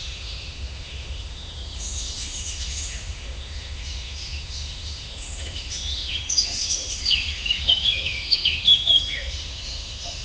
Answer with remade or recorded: remade